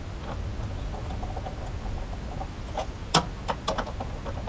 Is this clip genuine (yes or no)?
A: yes